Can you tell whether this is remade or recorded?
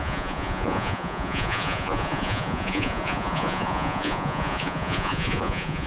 remade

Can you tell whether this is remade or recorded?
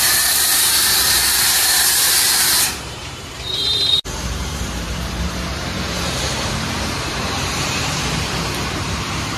remade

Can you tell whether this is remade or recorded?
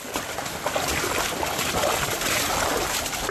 recorded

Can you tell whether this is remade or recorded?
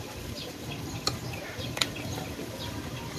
remade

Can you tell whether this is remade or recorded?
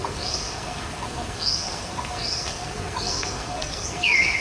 remade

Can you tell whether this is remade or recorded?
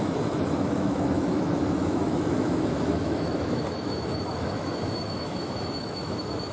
remade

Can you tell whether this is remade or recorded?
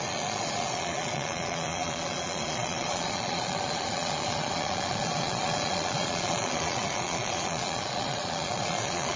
remade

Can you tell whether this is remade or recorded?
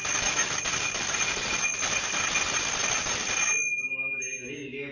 recorded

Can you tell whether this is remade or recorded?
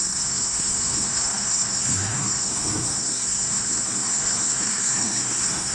remade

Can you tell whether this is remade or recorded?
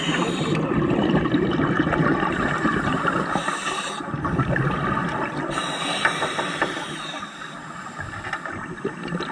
recorded